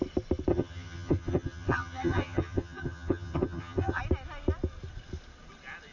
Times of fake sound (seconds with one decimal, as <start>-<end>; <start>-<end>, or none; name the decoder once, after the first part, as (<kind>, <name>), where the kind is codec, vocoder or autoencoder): 0.5-4.0 (vocoder, HiFi-GAN)